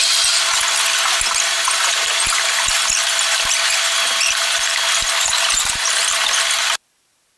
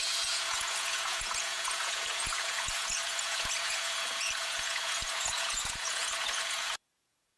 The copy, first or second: second